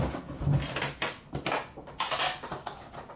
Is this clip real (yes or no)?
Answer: yes